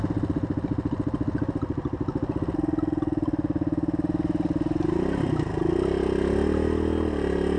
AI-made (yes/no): no